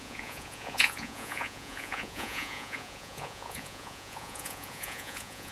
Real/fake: fake